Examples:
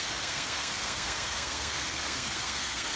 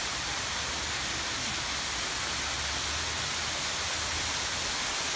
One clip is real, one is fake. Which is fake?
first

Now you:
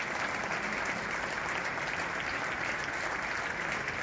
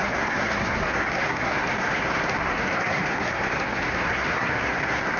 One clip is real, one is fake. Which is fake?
second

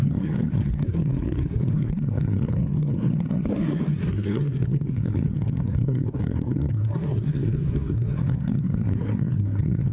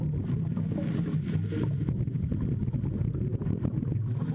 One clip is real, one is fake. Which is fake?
first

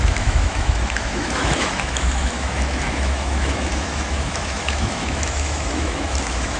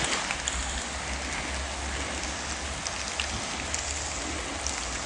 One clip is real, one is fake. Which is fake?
first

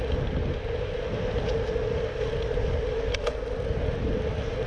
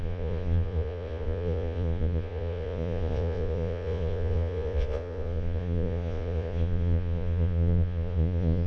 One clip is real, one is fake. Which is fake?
second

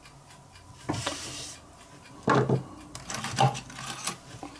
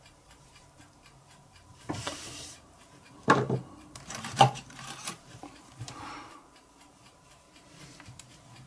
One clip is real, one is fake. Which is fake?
second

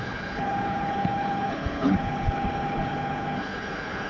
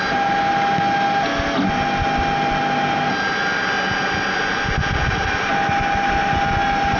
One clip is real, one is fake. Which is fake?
first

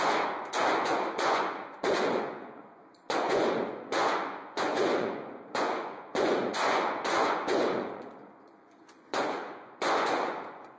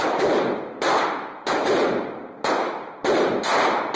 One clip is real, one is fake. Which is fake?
first